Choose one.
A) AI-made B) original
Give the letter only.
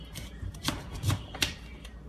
A